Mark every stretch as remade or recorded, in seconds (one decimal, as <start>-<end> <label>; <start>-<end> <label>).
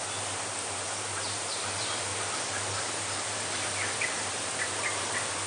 0.0-5.5 recorded